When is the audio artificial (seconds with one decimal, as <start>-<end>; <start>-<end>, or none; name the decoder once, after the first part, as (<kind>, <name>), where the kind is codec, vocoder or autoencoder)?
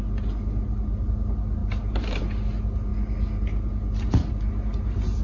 1.6-2.2 (vocoder, BigVGAN v2)